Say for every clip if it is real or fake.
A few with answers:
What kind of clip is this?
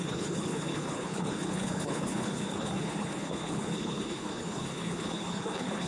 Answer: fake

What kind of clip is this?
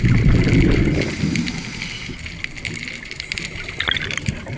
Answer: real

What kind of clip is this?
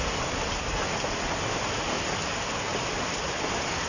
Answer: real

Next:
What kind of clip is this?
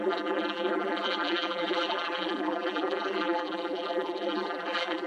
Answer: fake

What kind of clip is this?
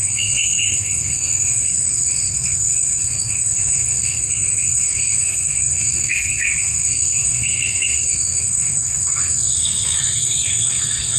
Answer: fake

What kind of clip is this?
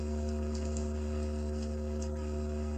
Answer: fake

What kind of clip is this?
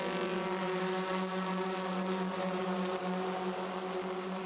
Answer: real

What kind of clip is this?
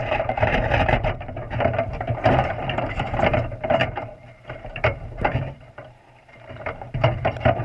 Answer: fake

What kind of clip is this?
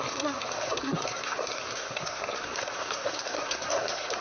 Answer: fake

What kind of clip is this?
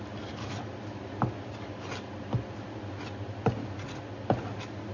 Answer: real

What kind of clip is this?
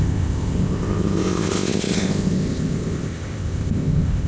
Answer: fake